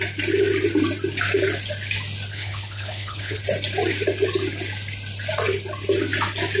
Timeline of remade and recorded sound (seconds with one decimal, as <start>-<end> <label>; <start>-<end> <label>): 0.0-2.3 recorded; 2.3-3.4 remade; 3.4-6.6 recorded